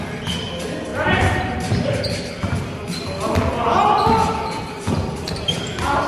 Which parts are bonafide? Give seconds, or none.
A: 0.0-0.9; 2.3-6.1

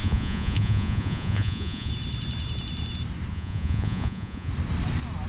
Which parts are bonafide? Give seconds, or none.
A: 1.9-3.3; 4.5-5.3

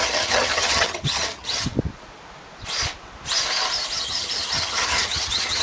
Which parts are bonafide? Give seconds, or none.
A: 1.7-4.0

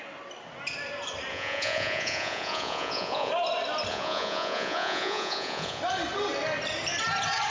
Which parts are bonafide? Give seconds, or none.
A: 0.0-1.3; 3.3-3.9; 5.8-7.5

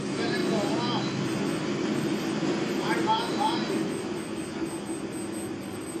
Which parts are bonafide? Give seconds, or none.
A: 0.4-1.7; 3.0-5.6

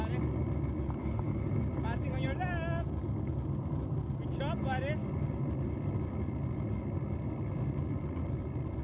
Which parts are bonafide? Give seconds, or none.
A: 0.0-1.0; 1.5-8.8

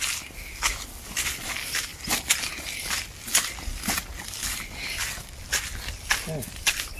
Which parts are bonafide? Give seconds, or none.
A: 0.0-7.0

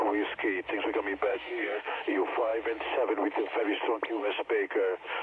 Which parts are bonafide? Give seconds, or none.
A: 0.0-1.2; 2.0-5.2